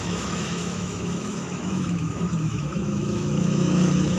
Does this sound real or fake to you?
fake